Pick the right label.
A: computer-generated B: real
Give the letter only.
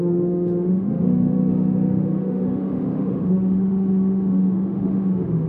A